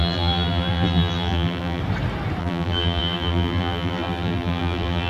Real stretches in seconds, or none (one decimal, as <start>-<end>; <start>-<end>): 1.8-2.4